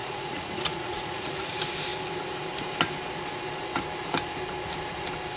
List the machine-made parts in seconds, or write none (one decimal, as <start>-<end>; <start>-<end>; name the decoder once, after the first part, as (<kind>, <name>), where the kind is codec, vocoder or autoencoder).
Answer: 0.0-1.5 (vocoder, Vocos)